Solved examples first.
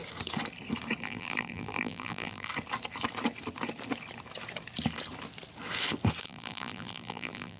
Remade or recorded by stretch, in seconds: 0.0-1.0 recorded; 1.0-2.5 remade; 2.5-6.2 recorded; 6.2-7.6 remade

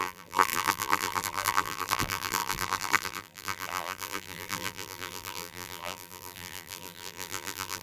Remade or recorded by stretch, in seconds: 0.0-7.8 remade

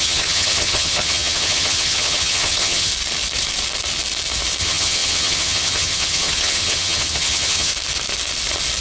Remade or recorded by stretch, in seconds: 0.0-2.9 remade; 2.9-4.6 recorded; 4.6-7.7 remade; 7.7-8.8 recorded

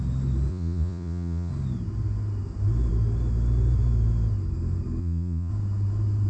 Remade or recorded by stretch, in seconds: 0.0-0.5 recorded; 0.5-1.5 remade; 1.5-5.0 recorded; 5.0-5.5 remade; 5.5-6.3 recorded

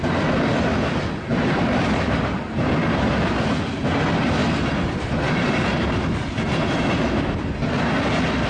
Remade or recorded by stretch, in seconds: 0.0-1.3 recorded; 1.3-3.9 remade; 3.9-4.4 recorded; 4.4-7.1 remade; 7.1-8.5 recorded